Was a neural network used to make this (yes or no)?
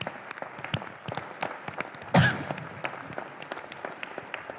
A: no